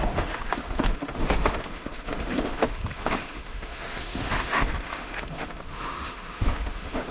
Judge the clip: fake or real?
fake